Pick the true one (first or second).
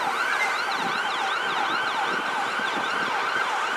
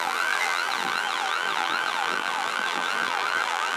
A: first